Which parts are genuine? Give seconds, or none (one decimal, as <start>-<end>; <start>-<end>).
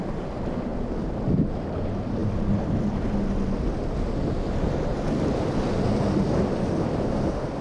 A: 0.0-7.6